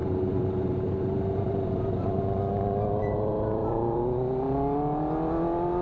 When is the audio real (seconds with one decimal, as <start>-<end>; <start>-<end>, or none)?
2.2-3.0; 4.0-5.8